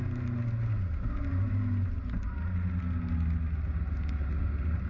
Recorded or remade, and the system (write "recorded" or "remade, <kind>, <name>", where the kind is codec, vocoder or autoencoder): recorded